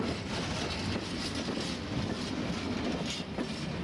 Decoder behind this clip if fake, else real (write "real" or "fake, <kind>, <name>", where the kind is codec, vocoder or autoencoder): real